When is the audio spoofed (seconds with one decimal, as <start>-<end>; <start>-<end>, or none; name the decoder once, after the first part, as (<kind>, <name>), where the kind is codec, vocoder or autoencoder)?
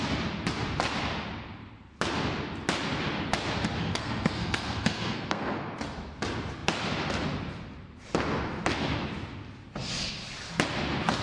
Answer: 3.8-5.7 (codec, SNAC)